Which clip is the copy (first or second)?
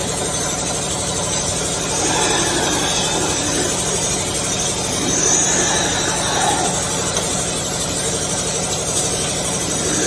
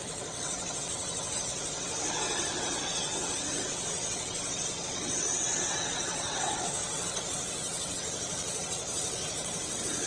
second